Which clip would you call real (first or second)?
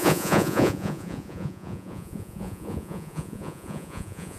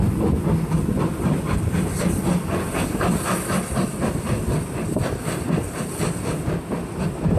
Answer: second